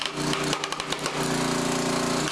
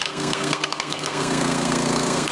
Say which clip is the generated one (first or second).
second